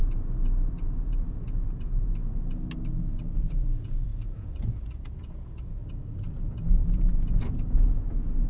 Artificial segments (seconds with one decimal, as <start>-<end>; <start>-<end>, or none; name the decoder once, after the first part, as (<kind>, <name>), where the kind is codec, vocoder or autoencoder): 0.7-2.2 (vocoder, Vocos); 3.3-8.5